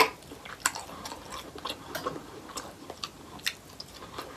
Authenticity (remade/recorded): recorded